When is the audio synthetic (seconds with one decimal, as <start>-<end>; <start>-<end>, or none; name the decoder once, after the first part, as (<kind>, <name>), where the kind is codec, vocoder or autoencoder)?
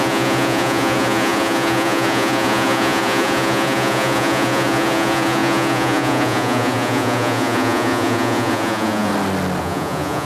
0.0-9.1 (vocoder, Vocos); 9.6-10.3